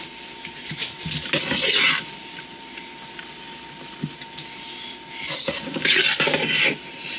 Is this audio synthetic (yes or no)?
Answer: no